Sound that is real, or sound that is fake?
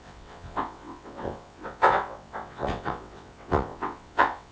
fake